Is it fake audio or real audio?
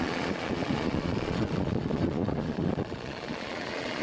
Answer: fake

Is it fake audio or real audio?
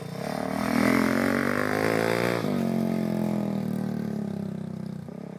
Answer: real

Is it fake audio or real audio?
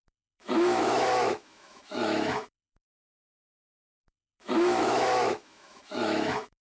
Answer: fake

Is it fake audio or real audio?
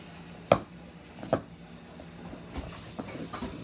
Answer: real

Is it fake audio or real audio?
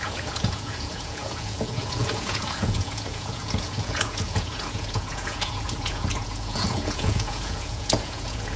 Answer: fake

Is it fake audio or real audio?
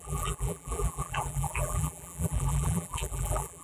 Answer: fake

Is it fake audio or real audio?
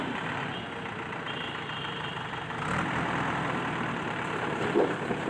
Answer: fake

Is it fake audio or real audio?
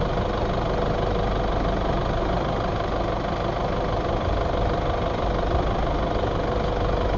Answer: real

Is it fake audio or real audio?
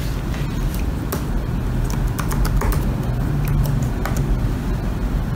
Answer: real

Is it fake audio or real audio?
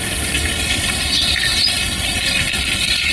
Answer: real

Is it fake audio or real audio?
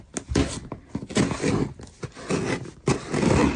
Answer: real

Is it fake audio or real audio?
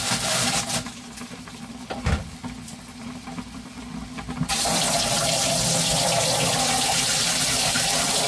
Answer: fake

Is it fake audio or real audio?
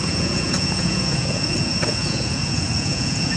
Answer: fake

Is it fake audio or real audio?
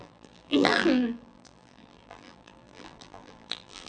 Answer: fake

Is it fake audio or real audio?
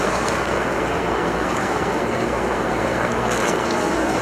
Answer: fake